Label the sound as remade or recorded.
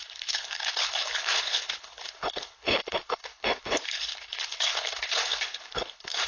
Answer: remade